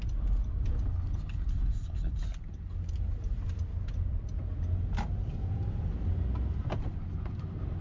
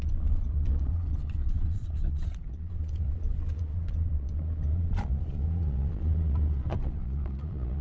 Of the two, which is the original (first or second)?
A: first